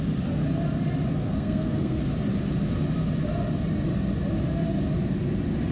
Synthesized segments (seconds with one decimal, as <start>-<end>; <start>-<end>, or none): 1.2-2.0